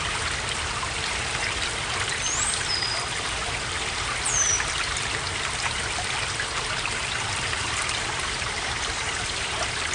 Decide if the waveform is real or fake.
fake